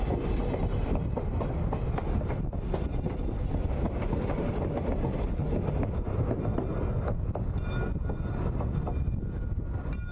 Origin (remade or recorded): recorded